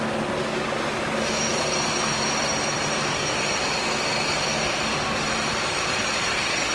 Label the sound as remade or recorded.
recorded